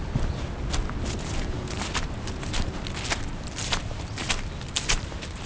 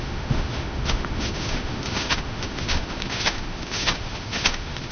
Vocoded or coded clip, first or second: second